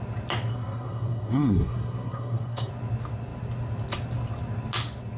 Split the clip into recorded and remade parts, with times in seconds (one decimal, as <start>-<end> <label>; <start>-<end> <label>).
0.0-0.5 recorded; 0.5-2.7 remade; 2.7-5.2 recorded